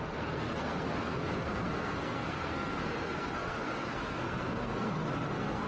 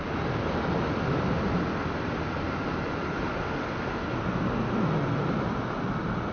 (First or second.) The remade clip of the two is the first